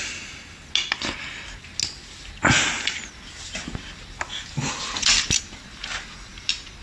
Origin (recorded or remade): recorded